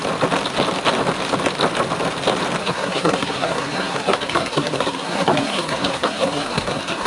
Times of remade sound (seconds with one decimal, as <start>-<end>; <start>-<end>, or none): 2.6-7.1